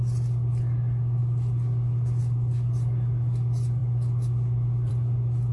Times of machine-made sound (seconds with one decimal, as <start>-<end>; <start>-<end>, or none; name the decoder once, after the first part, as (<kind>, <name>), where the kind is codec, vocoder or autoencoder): none